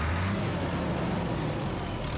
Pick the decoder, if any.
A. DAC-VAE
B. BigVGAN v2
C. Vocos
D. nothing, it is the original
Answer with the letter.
D